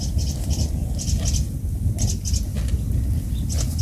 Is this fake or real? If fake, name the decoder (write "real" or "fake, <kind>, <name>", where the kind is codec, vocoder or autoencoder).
real